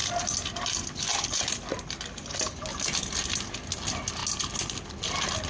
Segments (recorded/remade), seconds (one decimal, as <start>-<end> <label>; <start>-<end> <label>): 0.0-5.5 recorded